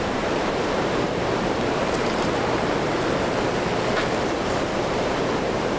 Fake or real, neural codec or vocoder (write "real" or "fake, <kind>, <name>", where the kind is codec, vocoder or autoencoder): fake, vocoder, BigVGAN v2